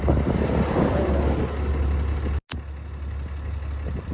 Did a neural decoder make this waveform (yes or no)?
no